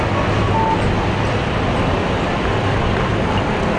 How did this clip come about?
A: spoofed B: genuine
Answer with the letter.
B